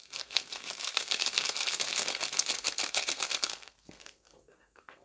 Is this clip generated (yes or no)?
yes